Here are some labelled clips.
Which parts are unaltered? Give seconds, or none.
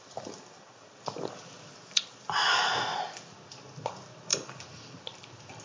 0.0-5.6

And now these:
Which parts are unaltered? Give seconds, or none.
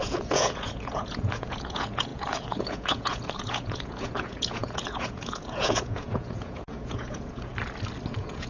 7.5-8.1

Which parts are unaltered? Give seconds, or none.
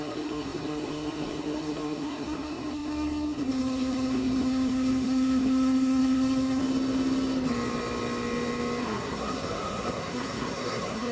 6.6-8.8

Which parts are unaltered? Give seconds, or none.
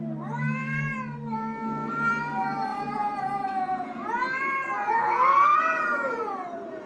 0.0-2.7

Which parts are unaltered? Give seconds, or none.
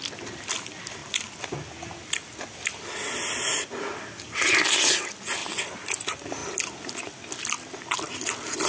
0.0-8.7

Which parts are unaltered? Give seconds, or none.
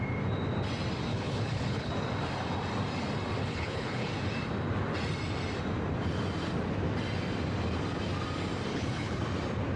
0.0-1.1; 1.9-3.4; 4.1-8.7; 9.2-9.8